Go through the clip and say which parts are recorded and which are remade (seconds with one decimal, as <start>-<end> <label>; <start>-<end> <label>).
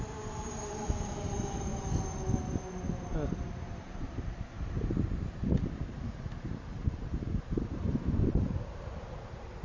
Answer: 0.0-1.7 remade; 1.7-3.6 recorded; 3.6-9.6 remade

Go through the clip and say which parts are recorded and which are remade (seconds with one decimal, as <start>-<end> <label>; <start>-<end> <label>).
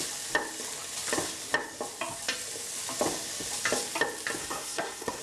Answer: 0.0-4.4 recorded; 4.4-5.2 remade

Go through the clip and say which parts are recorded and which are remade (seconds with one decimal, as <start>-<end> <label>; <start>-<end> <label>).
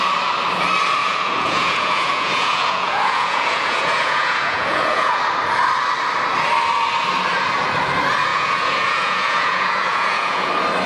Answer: 0.0-1.0 recorded; 1.0-5.2 remade; 5.2-8.3 recorded; 8.3-10.5 remade; 10.5-10.9 recorded